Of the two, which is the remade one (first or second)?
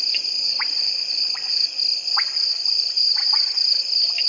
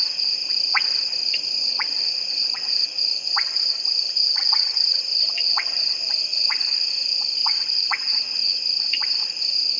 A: second